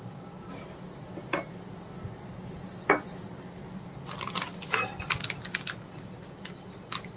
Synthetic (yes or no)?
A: no